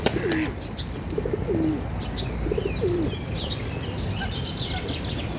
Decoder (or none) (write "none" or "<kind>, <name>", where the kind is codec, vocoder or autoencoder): vocoder, BigVGAN v2